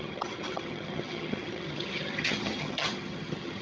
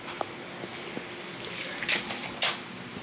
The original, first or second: second